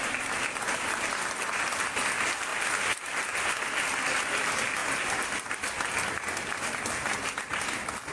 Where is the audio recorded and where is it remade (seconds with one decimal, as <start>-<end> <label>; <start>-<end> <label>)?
0.0-8.1 recorded

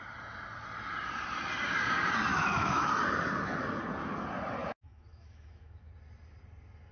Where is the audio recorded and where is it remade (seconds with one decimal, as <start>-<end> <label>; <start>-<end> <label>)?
0.0-2.3 recorded; 2.3-2.9 remade; 2.9-4.6 recorded; 4.6-5.9 remade; 5.9-6.9 recorded

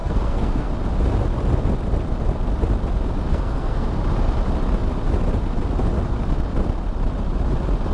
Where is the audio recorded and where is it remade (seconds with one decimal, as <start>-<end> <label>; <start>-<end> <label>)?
0.0-0.7 remade; 0.7-3.3 recorded; 3.3-3.9 remade; 3.9-7.9 recorded

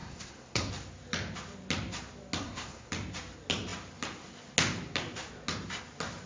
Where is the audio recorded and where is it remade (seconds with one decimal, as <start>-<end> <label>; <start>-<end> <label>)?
0.0-0.7 remade; 0.7-2.4 recorded; 2.4-2.9 remade; 2.9-6.3 recorded

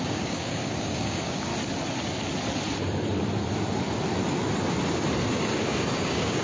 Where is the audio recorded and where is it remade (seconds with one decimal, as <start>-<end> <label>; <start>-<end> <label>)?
0.0-1.5 remade; 1.5-5.3 recorded; 5.3-6.4 remade

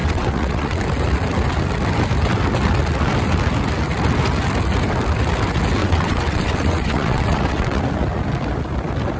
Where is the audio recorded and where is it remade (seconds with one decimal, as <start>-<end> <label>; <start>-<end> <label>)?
0.0-0.8 remade; 0.8-5.8 recorded; 5.8-7.8 remade; 7.8-9.2 recorded

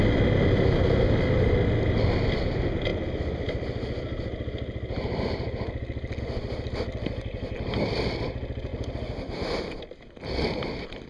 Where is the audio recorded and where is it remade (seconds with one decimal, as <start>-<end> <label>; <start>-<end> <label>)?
0.0-11.1 recorded